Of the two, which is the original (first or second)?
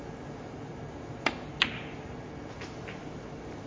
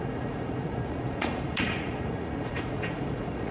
first